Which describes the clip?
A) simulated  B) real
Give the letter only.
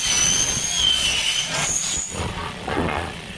A